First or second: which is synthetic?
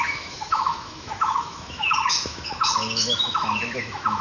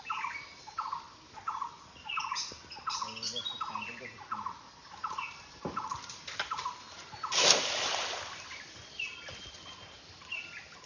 first